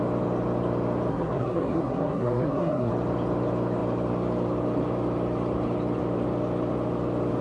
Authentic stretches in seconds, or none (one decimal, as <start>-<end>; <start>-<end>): 0.0-1.1; 2.9-7.4